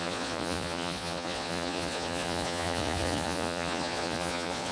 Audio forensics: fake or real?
fake